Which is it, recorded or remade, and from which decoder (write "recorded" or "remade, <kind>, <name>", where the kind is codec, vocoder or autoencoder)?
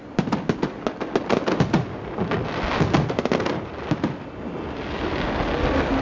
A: recorded